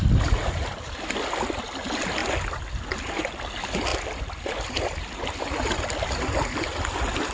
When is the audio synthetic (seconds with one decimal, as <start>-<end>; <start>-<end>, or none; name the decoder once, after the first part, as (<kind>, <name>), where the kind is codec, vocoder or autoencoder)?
none